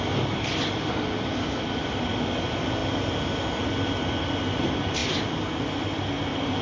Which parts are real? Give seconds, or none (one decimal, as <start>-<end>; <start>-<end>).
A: 0.0-6.6